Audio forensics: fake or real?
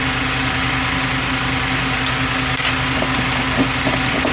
real